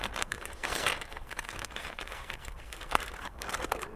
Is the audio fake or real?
fake